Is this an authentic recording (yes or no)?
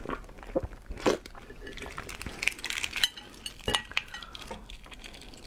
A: yes